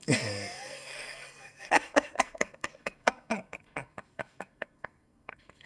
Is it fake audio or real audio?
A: fake